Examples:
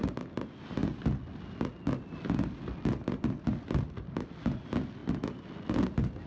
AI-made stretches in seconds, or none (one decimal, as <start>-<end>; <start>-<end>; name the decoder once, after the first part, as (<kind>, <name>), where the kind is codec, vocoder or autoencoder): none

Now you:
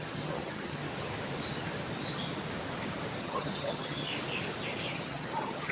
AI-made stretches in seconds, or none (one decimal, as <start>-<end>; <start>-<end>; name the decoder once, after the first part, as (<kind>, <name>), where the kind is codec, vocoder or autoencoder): 0.0-0.8 (vocoder, HiFi-GAN); 3.2-4.1; 4.9-5.7

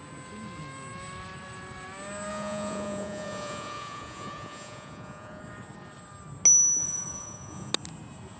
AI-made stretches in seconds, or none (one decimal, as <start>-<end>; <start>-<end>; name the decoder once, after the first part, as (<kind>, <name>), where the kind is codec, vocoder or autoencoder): 2.3-5.4 (vocoder, Vocos); 6.8-7.7